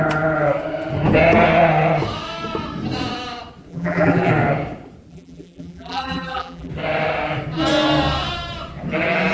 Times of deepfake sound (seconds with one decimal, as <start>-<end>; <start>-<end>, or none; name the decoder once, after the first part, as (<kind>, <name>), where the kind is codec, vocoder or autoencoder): 3.7-4.3 (vocoder, BigVGAN v2); 5.1-6.7